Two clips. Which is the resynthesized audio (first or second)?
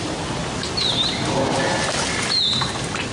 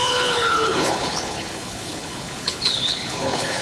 second